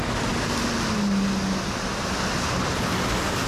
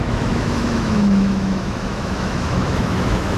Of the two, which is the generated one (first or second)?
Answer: second